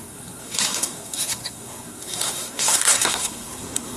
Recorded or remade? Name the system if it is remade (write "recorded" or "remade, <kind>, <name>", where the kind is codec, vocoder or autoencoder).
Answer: remade, codec, SNAC